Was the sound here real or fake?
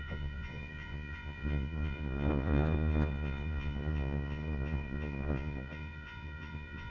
fake